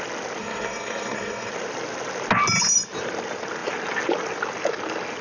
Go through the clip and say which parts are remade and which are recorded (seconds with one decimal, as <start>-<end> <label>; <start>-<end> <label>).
0.0-0.4 recorded; 0.4-1.5 remade; 1.5-5.2 recorded